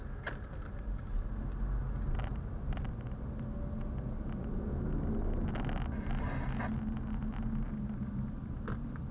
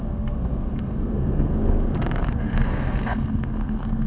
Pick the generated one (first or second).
second